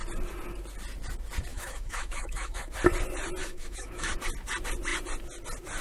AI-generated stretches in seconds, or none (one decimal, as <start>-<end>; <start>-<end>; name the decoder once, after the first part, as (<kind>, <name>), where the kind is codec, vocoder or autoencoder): 1.5-2.7 (autoencoder, DAC-VAE); 3.4-4.1